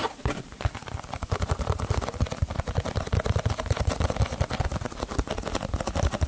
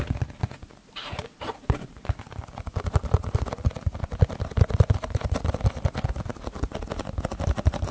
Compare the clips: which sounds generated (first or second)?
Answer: first